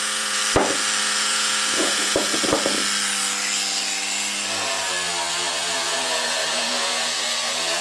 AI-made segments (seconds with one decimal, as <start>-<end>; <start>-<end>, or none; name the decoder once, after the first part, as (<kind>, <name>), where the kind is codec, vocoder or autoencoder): 0.0-0.4 (vocoder, Vocos); 1.0-2.3; 5.3-7.8